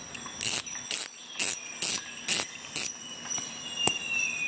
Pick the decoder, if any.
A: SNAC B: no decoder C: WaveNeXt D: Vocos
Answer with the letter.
B